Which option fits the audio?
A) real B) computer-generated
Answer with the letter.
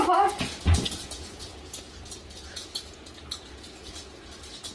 B